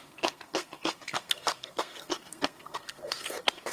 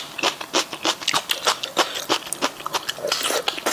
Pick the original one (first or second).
second